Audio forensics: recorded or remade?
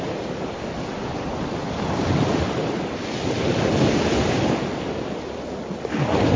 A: recorded